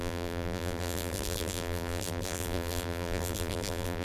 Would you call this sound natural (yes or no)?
no